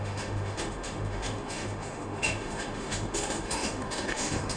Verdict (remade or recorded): remade